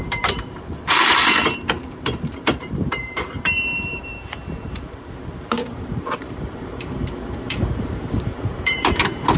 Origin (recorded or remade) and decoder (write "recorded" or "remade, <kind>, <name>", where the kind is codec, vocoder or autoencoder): remade, vocoder, BigVGAN v2